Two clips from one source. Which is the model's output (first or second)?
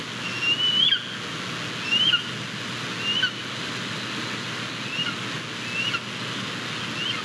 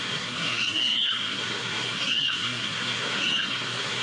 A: second